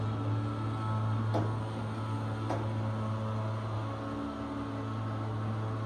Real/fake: real